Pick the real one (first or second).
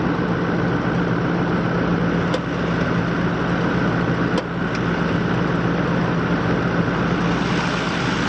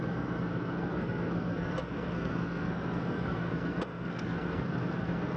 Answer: first